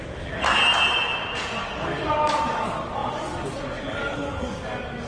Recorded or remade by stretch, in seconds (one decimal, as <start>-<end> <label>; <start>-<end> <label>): 0.0-0.6 remade; 0.6-1.6 recorded; 1.6-5.1 remade